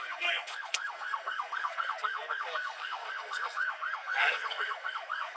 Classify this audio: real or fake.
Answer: fake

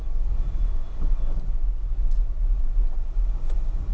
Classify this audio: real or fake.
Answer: real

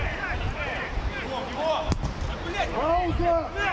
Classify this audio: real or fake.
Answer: real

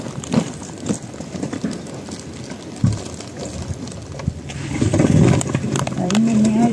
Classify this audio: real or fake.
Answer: fake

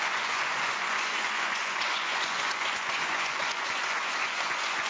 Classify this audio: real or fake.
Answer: fake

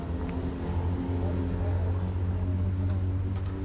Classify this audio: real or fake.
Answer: real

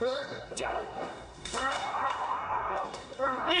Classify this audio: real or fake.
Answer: fake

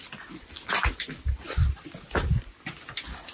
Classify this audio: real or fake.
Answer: real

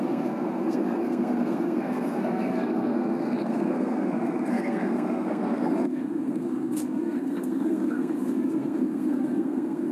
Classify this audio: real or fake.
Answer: fake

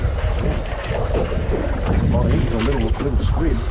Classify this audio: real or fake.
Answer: real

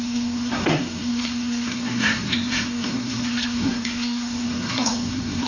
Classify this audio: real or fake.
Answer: fake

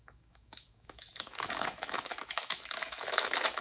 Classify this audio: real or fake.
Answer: fake